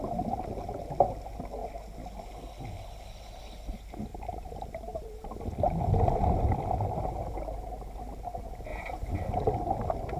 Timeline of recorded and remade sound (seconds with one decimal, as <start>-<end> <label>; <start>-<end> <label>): 0.0-4.1 recorded; 4.1-5.3 remade; 5.3-8.7 recorded; 8.7-9.3 remade; 9.3-10.2 recorded